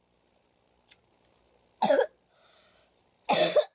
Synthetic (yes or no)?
no